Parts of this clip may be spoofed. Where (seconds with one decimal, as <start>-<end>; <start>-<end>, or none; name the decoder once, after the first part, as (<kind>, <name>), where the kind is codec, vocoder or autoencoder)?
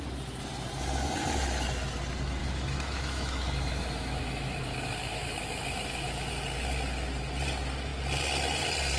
2.4-6.3 (autoencoder, DAC-VAE)